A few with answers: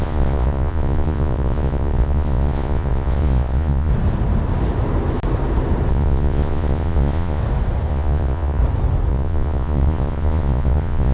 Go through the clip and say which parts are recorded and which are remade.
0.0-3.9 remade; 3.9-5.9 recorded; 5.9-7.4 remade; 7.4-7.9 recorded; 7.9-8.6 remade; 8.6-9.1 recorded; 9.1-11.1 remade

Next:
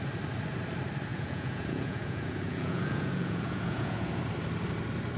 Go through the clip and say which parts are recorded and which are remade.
0.0-1.1 recorded; 1.1-4.2 remade; 4.2-5.2 recorded

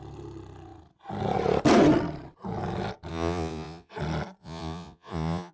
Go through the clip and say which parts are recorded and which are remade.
0.0-3.1 recorded; 3.1-3.9 remade; 3.9-4.4 recorded; 4.4-5.5 remade

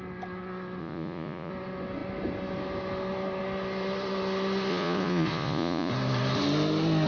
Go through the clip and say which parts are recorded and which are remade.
0.0-0.8 recorded; 0.8-1.5 remade; 1.5-4.7 recorded; 4.7-5.9 remade; 5.9-7.1 recorded